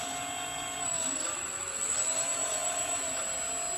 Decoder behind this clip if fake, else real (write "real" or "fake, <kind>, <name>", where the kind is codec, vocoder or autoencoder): real